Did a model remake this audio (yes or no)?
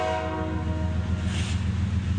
no